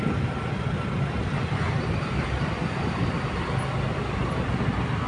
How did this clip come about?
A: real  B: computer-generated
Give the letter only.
B